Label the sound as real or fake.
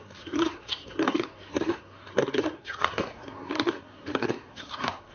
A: fake